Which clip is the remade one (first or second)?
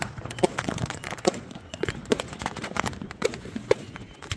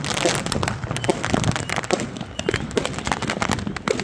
first